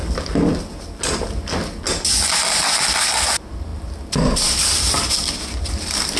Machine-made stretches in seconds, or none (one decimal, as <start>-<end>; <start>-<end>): none